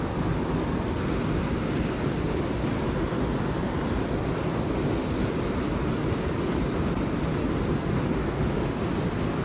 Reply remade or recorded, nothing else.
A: recorded